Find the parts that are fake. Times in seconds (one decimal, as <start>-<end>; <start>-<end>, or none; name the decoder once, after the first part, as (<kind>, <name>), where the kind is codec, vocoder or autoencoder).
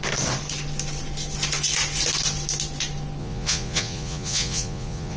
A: 3.2-5.2 (vocoder, Vocos)